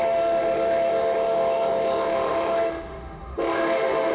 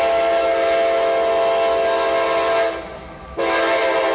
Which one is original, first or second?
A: second